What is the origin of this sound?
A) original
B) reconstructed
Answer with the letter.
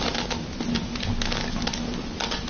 A